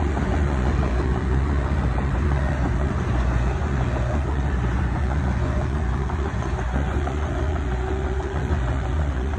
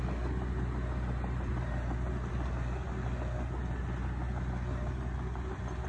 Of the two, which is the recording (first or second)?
second